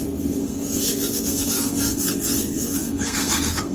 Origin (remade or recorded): remade